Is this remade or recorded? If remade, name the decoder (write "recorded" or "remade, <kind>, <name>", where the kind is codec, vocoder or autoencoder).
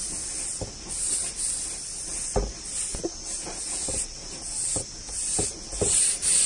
recorded